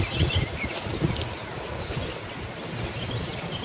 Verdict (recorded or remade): recorded